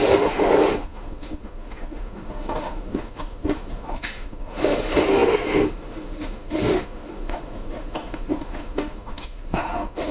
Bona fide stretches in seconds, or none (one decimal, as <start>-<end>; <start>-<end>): none